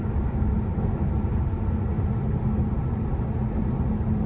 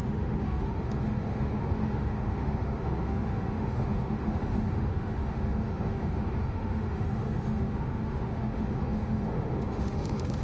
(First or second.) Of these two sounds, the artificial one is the second